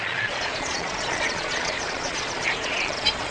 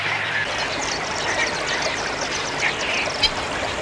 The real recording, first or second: second